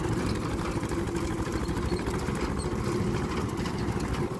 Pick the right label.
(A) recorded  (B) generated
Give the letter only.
B